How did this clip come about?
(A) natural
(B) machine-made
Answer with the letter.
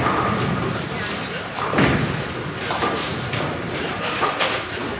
A